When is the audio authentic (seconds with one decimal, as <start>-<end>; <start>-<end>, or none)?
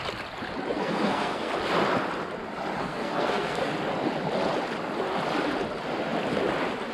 0.0-0.7; 1.5-2.8; 3.7-6.9